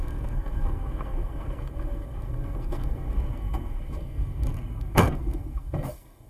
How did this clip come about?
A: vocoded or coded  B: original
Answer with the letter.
A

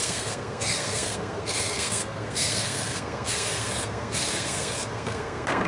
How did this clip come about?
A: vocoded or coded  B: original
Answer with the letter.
A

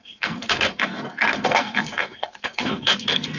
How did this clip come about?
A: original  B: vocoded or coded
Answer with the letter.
B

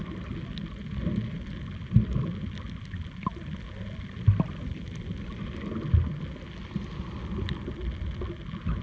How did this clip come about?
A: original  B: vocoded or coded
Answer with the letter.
A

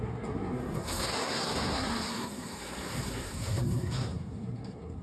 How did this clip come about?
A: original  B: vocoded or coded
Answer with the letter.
B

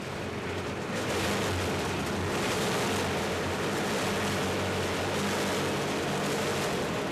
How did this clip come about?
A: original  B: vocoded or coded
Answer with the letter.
A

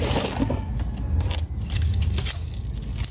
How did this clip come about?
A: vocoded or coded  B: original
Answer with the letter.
B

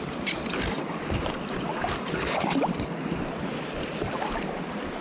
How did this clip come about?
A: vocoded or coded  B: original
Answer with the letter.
B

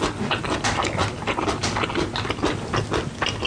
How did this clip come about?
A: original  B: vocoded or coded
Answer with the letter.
A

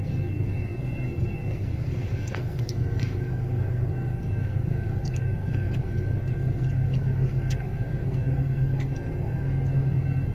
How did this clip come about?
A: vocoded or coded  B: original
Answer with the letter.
A